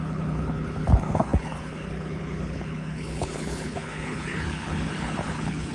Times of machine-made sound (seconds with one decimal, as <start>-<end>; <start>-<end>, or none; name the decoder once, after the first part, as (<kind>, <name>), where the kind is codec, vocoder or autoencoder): 0.0-5.7 (codec, HILCodec)